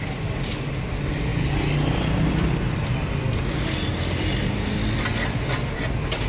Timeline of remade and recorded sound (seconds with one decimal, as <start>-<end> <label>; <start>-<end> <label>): 0.0-6.3 recorded